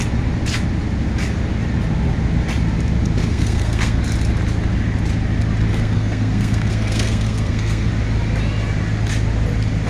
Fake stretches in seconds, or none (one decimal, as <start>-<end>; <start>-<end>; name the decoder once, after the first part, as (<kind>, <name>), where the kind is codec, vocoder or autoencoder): 3.2-4.0 (codec, SNAC); 5.7-7.9